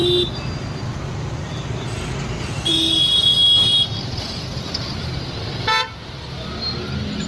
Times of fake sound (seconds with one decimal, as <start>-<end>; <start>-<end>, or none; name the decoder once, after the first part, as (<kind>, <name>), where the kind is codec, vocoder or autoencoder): none